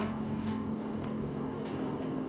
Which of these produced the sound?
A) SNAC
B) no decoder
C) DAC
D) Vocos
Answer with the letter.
C